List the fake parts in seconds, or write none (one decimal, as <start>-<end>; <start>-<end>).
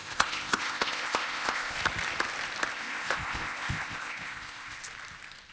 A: 0.0-1.8; 2.7-4.8